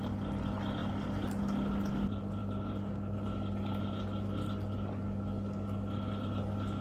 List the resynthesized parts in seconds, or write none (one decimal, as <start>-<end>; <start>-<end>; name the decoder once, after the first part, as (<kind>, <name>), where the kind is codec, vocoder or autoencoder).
none